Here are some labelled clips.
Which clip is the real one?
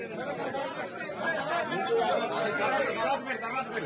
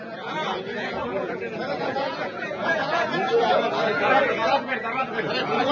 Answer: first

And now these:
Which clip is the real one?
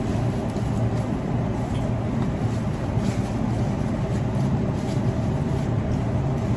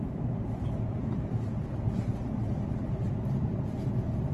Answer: first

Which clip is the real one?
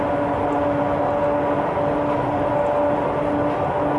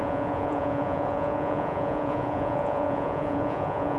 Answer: first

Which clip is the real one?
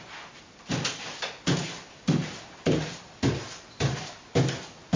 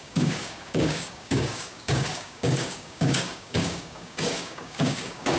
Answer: first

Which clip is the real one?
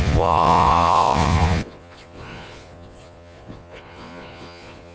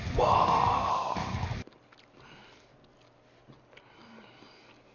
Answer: second